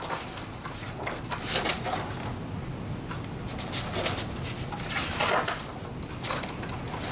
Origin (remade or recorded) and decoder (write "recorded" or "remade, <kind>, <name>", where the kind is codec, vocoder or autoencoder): recorded